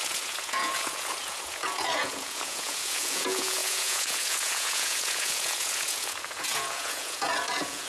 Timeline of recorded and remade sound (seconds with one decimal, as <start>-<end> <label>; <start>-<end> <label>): 0.0-7.9 remade